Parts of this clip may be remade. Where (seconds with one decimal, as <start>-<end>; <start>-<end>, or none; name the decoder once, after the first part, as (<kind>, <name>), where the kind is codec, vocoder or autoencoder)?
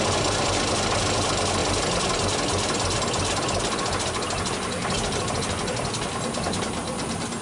none